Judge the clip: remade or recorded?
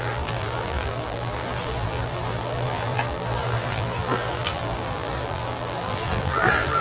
remade